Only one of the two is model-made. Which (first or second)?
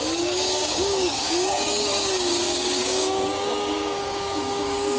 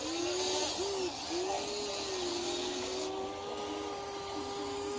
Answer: first